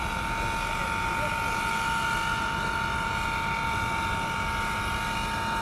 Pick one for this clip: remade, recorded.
recorded